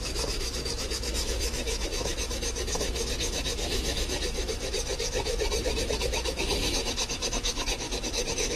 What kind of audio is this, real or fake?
fake